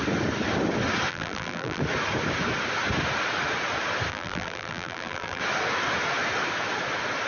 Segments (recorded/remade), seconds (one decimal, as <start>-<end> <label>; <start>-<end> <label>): 0.0-1.1 recorded; 1.1-1.8 remade; 1.8-4.1 recorded; 4.1-5.4 remade; 5.4-7.3 recorded